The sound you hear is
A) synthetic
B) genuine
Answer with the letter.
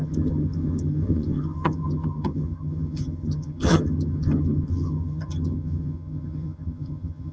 A